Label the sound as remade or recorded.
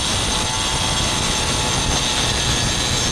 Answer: recorded